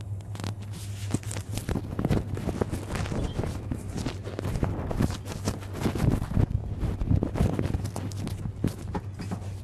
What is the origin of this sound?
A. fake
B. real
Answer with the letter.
B